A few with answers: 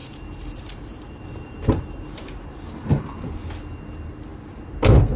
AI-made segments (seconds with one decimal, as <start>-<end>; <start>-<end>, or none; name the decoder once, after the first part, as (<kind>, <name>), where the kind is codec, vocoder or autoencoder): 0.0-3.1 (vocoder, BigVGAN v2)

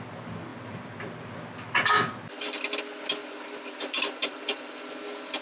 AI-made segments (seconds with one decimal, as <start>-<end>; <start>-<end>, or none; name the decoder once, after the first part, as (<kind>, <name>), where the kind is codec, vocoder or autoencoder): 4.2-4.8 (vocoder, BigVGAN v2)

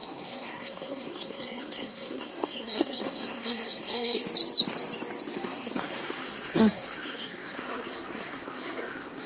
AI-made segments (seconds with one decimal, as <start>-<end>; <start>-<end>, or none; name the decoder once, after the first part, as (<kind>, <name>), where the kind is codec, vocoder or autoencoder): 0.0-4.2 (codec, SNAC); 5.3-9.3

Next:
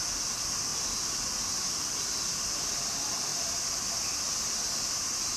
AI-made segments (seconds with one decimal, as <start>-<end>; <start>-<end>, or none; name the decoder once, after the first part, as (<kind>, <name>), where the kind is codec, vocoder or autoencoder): none

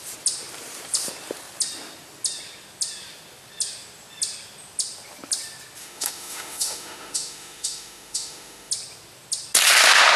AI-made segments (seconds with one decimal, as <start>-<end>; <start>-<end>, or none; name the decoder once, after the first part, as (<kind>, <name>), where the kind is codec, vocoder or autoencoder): 5.8-8.7 (autoencoder, DAC-VAE)

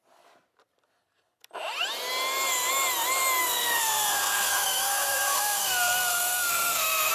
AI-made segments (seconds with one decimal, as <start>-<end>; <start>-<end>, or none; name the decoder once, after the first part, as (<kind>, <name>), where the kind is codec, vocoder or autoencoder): 3.4-7.1 (codec, SNAC)

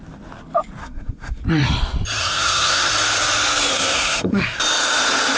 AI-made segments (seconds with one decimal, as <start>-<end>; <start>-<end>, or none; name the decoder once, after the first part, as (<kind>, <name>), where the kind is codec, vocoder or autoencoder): 0.8-1.4 (codec, SNAC); 2.2-2.9; 3.7-4.6

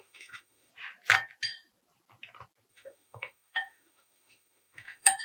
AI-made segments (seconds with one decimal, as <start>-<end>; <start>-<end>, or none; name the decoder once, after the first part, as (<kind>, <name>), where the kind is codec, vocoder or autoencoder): 0.0-0.7 (autoencoder, DAC-VAE); 2.7-5.2